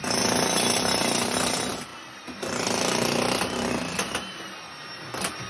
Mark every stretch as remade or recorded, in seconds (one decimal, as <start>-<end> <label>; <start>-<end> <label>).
0.0-5.5 recorded